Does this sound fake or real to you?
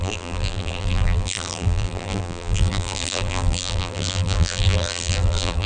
fake